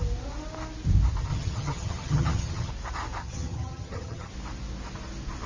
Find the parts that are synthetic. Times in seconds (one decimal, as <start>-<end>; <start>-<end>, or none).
1.3-2.7; 3.2-4.3